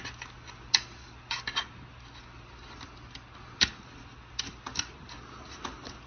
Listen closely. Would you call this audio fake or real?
real